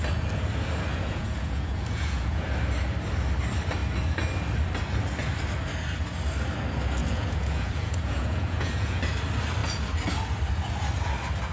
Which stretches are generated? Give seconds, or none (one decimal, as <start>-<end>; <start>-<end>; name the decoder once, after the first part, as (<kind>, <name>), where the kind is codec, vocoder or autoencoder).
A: 0.9-2.4 (vocoder, Vocos); 7.0-9.0